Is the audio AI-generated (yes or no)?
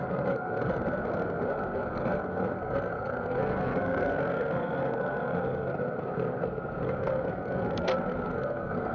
yes